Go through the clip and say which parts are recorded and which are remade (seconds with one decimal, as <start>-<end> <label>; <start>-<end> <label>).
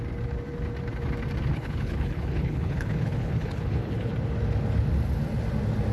0.0-1.5 recorded; 1.5-4.1 remade; 4.1-5.9 recorded